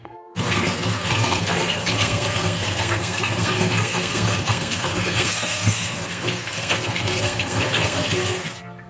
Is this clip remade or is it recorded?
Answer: remade